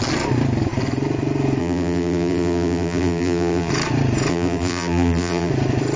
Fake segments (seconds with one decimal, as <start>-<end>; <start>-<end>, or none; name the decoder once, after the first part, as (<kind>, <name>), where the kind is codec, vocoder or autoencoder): 1.6-3.7 (vocoder, BigVGAN v2); 4.3-5.5